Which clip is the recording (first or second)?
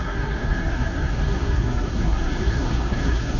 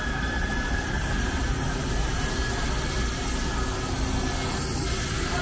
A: second